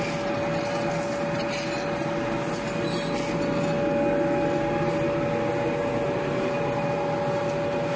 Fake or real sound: real